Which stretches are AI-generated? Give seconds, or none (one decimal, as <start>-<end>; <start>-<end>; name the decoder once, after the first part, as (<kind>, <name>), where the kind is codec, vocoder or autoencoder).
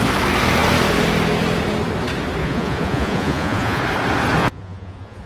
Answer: 2.4-3.8 (vocoder, Vocos); 4.4-5.3